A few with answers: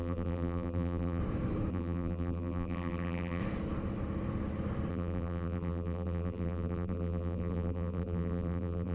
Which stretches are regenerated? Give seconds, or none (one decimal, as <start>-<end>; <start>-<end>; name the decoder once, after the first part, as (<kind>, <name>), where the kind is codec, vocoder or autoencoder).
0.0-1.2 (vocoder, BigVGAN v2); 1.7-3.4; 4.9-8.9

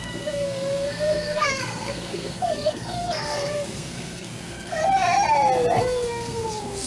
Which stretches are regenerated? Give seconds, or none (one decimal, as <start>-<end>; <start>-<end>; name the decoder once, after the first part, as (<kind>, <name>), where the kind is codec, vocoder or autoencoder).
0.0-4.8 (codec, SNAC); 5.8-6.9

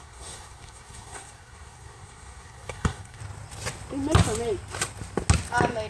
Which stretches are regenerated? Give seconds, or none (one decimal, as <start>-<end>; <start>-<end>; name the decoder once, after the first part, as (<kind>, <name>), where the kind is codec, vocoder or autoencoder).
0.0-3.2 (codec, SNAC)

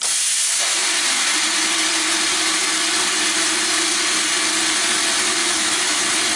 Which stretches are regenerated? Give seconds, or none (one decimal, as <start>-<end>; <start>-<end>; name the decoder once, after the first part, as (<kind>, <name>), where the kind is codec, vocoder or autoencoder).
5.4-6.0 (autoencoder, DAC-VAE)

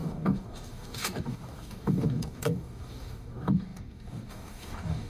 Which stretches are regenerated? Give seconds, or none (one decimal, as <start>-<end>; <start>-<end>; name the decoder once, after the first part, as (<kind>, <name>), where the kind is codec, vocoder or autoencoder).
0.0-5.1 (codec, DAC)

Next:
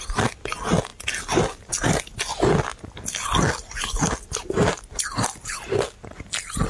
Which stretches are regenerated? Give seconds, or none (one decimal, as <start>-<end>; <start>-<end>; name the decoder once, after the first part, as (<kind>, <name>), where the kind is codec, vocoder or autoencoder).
none